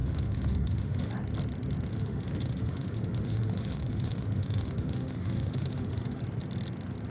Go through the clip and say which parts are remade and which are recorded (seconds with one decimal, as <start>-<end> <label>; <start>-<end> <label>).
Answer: 0.0-1.1 remade; 1.1-1.9 recorded; 1.9-6.2 remade; 6.2-7.1 recorded